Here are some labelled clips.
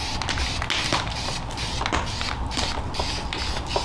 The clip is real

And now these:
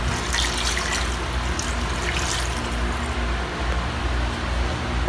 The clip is real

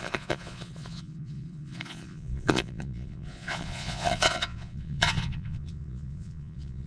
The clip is fake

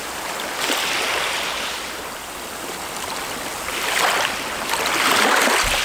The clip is real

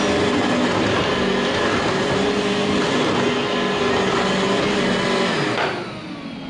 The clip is real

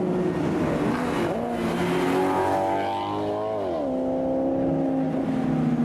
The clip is real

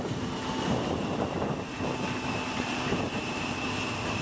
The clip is real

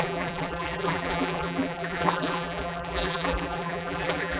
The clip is fake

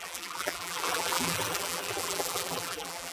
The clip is fake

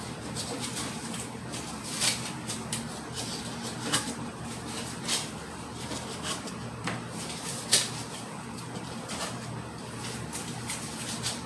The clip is fake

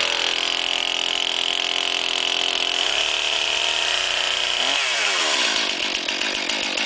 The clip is real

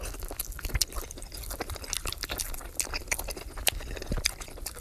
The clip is real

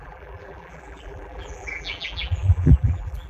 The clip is fake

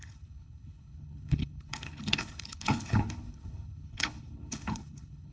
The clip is fake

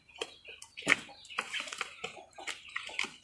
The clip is real